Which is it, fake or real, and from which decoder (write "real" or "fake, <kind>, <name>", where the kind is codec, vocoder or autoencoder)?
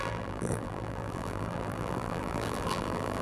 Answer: fake, vocoder, BigVGAN v2